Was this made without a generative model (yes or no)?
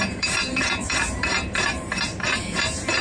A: no